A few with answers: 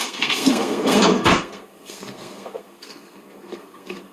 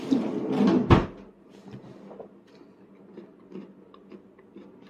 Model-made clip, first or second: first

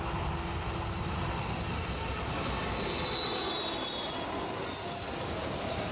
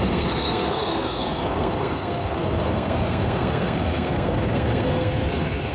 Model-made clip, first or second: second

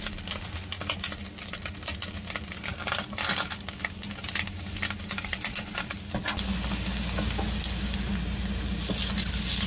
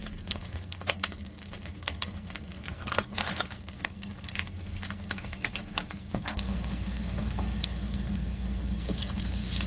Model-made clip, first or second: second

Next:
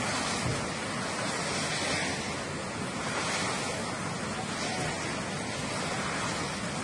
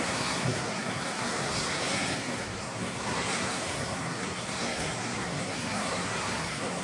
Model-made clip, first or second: second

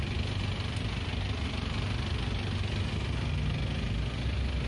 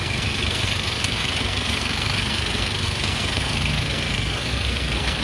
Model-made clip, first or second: second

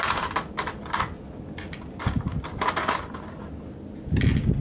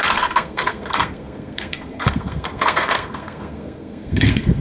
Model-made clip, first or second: second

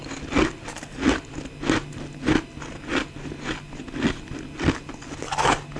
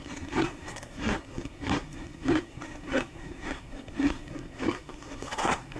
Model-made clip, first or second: second